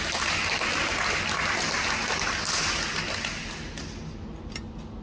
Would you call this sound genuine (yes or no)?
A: yes